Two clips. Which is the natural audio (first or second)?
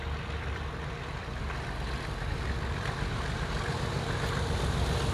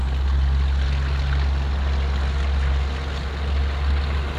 second